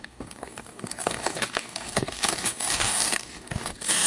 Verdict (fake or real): fake